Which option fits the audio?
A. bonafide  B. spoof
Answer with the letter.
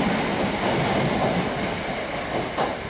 A